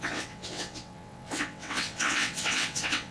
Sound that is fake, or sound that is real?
fake